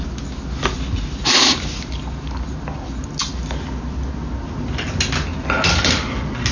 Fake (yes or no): no